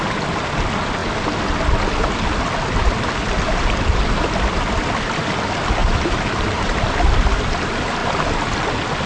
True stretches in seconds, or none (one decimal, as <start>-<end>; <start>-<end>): 0.0-5.8; 7.0-9.1